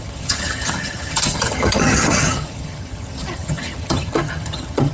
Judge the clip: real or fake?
fake